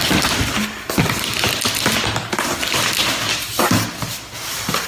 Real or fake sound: real